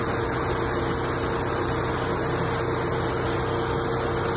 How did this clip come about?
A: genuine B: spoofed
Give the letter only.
A